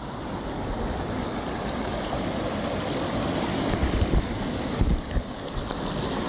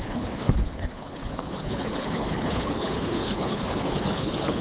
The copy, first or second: second